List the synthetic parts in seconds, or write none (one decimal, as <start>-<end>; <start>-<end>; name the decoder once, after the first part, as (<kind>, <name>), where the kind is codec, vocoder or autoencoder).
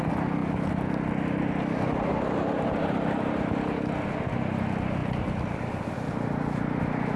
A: none